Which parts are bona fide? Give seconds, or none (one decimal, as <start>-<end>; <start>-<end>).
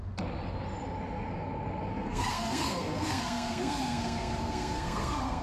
0.0-1.9